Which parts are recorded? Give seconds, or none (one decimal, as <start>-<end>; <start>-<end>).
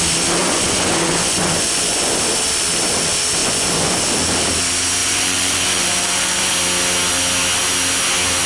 0.0-0.4; 2.2-3.4; 4.0-5.0; 6.5-8.5